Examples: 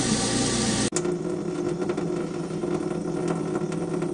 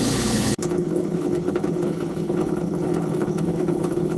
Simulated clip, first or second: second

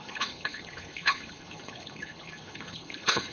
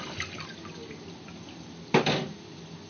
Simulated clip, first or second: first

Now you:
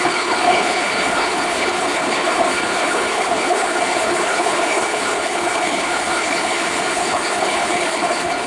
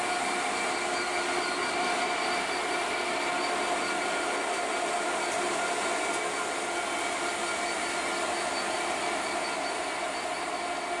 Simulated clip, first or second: first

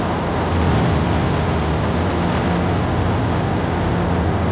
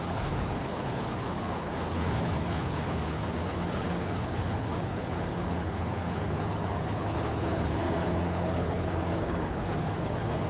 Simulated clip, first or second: second